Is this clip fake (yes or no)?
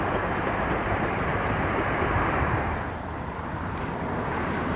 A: yes